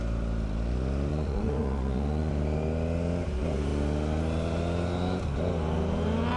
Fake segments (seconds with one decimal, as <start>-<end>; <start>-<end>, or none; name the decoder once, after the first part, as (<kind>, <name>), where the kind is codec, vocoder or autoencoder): 1.1-2.3 (vocoder, Vocos)